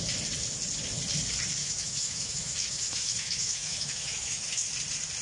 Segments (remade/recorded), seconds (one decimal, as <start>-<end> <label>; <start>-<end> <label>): 0.0-1.6 recorded; 1.6-4.7 remade; 4.7-5.2 recorded

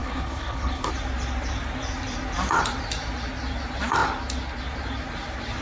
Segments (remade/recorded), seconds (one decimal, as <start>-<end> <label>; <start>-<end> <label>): 0.0-0.9 remade; 0.9-5.6 recorded

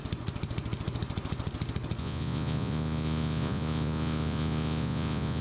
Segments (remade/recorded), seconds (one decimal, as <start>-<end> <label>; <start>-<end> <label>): 0.0-2.0 recorded; 2.0-5.4 remade